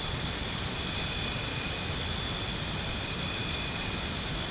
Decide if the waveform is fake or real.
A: real